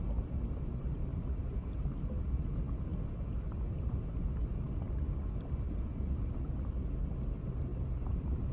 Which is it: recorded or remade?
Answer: recorded